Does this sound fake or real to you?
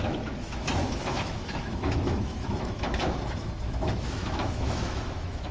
fake